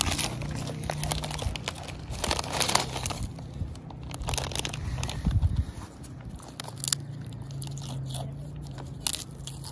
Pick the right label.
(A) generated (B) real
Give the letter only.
B